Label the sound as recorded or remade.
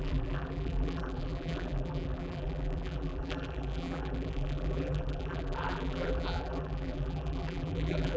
remade